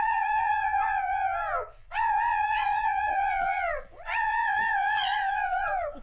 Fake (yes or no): yes